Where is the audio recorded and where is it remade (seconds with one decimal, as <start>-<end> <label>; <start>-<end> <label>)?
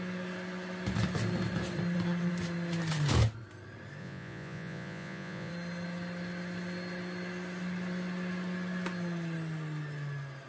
0.0-4.0 recorded; 4.0-5.5 remade; 5.5-10.5 recorded